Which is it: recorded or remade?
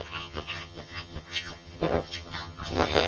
remade